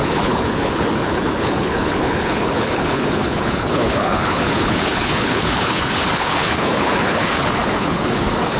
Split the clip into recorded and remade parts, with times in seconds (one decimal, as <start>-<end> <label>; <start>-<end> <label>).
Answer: 0.0-8.6 remade